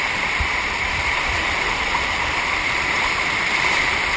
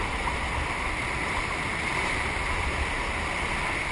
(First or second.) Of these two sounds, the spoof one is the first